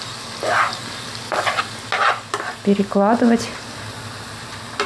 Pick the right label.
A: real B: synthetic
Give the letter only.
A